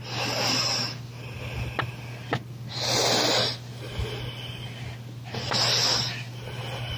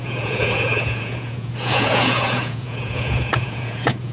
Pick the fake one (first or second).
second